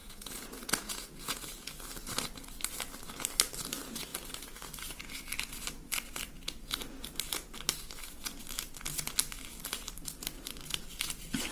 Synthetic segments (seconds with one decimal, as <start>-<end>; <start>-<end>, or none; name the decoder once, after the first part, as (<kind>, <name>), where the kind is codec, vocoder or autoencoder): 0.0-1.7 (vocoder, Vocos)